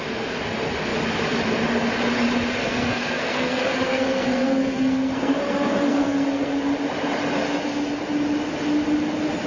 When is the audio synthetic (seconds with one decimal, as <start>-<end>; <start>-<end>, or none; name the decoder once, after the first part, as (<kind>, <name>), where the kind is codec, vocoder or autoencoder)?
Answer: 2.6-6.6 (codec, SNAC)